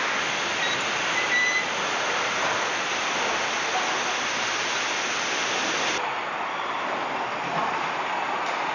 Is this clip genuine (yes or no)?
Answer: yes